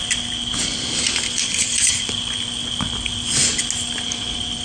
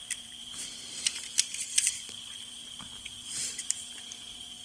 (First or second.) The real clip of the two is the first